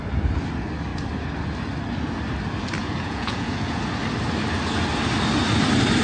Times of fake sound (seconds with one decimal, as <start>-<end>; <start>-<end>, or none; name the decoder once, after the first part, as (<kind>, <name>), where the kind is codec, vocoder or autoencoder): 2.8-3.8 (vocoder, Vocos)